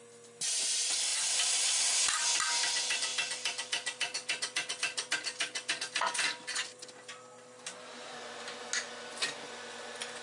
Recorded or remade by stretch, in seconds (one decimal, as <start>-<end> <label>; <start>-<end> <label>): 0.0-1.1 recorded; 1.1-1.8 remade; 1.8-3.1 recorded; 3.1-8.1 remade; 8.1-10.2 recorded